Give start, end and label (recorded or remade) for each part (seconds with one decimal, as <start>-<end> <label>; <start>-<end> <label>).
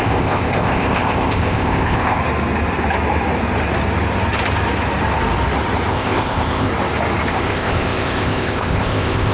0.0-2.2 remade; 2.2-5.9 recorded; 5.9-6.7 remade; 6.7-7.3 recorded; 7.3-9.3 remade